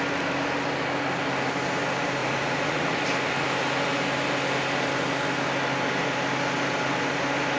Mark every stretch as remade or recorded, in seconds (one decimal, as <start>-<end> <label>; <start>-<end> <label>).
0.0-2.2 recorded; 2.2-3.0 remade; 3.0-7.6 recorded

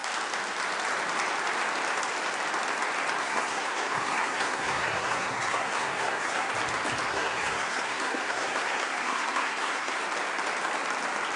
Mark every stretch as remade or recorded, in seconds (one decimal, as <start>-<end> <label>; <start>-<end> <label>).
0.0-3.2 recorded; 3.2-6.5 remade; 6.5-7.1 recorded; 7.1-10.0 remade; 10.0-11.4 recorded

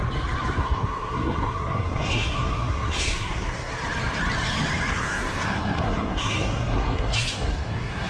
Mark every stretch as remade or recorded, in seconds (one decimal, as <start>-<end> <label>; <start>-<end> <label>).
0.0-0.6 recorded; 0.6-3.7 remade; 3.7-4.9 recorded; 4.9-8.1 remade

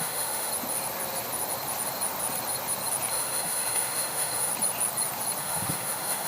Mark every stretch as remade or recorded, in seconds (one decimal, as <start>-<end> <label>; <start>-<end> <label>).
0.0-0.5 remade; 0.5-3.1 recorded; 3.1-4.5 remade; 4.5-5.4 recorded; 5.4-6.3 remade

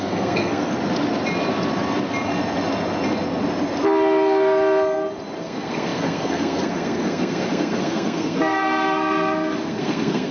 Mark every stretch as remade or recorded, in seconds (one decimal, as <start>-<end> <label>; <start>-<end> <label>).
0.0-0.7 remade; 0.7-5.4 recorded; 5.4-10.3 remade

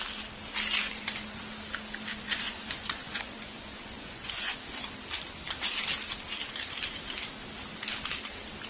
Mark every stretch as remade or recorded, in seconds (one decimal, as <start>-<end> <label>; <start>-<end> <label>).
0.0-0.8 recorded; 0.8-1.4 remade; 1.4-2.1 recorded; 2.1-4.9 remade; 4.9-8.7 recorded

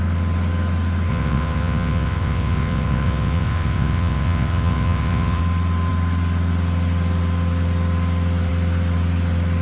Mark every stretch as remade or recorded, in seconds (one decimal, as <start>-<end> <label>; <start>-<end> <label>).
0.0-1.1 recorded; 1.1-5.4 remade; 5.4-9.6 recorded

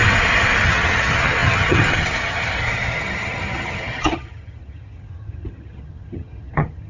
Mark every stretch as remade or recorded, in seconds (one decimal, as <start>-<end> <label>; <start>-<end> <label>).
0.0-0.6 recorded; 0.6-6.9 remade